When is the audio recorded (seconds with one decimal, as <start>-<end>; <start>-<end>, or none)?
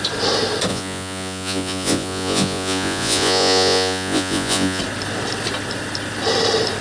0.0-0.7; 4.8-6.8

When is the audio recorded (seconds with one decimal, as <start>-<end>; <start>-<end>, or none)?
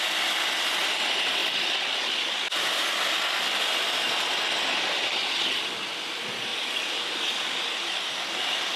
0.0-8.8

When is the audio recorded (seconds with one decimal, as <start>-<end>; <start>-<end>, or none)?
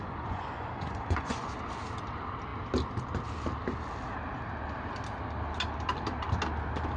1.5-7.0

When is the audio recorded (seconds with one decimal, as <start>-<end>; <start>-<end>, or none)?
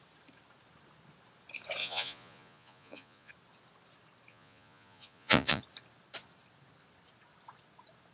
0.0-1.8; 3.3-4.3; 5.6-8.1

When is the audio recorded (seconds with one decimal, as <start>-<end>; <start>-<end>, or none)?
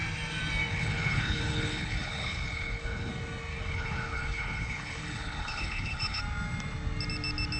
0.0-0.7; 3.1-3.5; 6.2-7.6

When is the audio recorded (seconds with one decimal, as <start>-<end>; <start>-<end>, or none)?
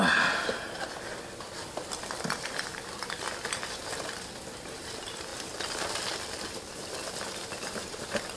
0.0-8.4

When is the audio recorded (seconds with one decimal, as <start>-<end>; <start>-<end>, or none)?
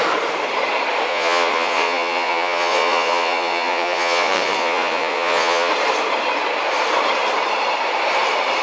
0.0-1.1; 5.7-8.6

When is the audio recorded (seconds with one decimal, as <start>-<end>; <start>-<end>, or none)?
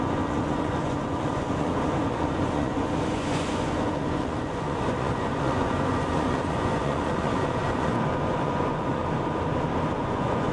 9.0-9.9